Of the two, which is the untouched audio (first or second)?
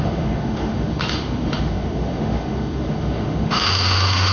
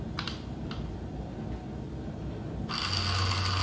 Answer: second